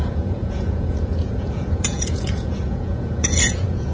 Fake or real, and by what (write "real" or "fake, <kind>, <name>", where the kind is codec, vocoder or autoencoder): fake, vocoder, Vocos